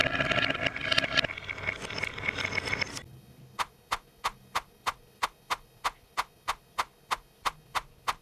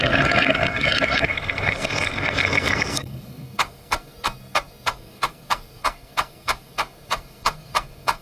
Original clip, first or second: first